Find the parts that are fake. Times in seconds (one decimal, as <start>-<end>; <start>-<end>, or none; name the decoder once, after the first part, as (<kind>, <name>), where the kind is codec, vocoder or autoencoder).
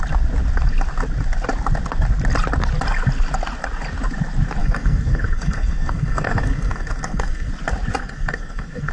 4.6-7.5 (codec, SNAC); 8.0-8.9